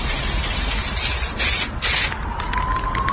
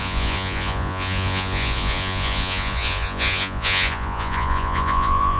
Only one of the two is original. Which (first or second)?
first